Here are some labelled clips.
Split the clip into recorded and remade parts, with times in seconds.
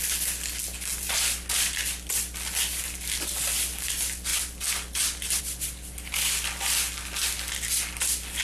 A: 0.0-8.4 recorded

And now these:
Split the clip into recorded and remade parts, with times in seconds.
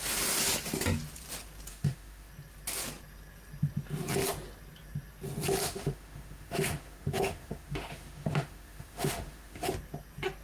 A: 0.0-1.7 recorded; 1.7-2.3 remade; 2.3-5.6 recorded; 5.6-9.7 remade; 9.7-10.4 recorded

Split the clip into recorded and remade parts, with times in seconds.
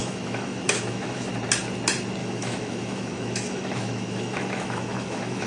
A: 0.0-1.3 remade; 1.3-2.2 recorded; 2.2-5.5 remade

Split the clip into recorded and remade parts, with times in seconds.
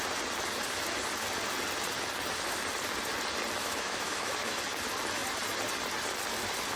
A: 0.0-3.6 recorded; 3.6-4.6 remade; 4.6-6.8 recorded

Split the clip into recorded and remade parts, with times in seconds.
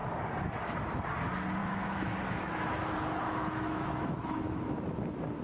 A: 0.0-1.6 recorded; 1.6-4.8 remade; 4.8-5.4 recorded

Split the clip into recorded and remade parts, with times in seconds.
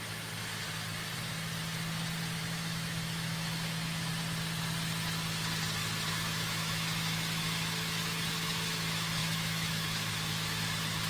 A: 0.0-0.5 remade; 0.5-2.4 recorded; 2.4-4.1 remade; 4.1-6.1 recorded; 6.1-11.1 remade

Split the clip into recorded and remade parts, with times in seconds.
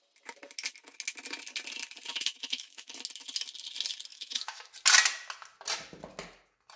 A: 0.0-2.1 recorded; 2.1-2.9 remade; 2.9-4.1 recorded; 4.1-4.7 remade; 4.7-6.8 recorded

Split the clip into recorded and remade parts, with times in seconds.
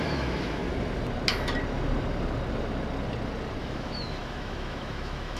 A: 0.0-0.6 remade; 0.6-3.6 recorded; 3.6-5.4 remade